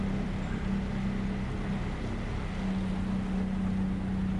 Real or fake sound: real